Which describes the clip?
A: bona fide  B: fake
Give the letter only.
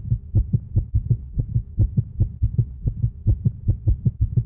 A